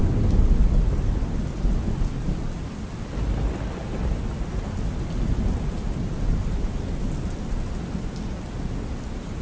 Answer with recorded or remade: recorded